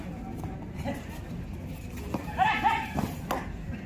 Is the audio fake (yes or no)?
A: no